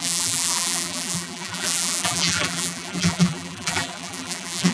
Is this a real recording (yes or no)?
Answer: no